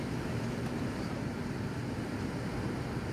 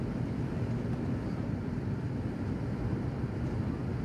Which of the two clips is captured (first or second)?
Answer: first